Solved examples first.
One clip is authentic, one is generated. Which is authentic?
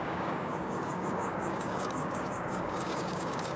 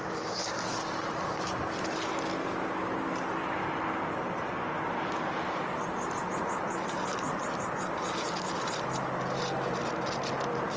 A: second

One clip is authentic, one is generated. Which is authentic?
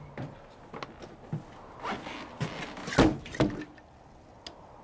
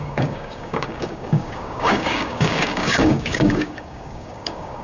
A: first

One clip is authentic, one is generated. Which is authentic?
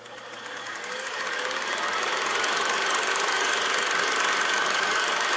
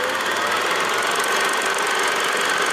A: second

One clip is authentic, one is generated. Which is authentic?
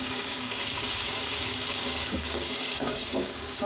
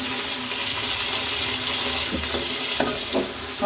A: second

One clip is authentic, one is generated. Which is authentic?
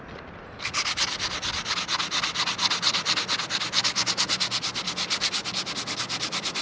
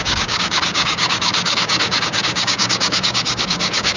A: first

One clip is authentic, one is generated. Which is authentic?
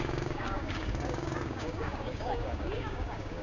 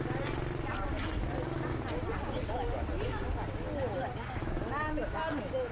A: second